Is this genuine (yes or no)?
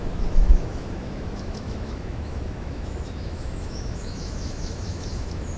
no